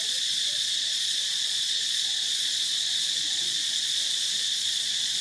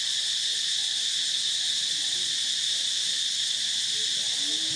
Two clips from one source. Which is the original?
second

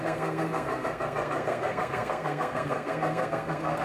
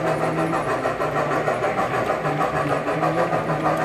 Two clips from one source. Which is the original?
second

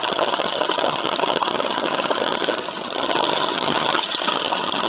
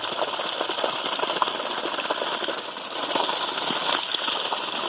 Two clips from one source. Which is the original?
second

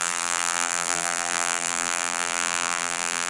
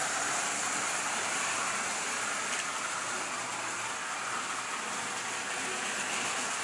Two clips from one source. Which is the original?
second